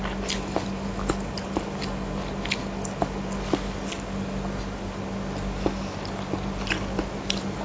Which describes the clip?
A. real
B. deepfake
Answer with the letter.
A